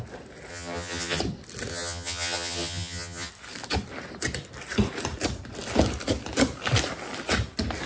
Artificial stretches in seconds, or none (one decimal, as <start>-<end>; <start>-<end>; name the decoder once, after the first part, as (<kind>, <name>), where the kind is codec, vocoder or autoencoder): 0.5-1.2 (vocoder, HiFi-GAN); 1.7-3.3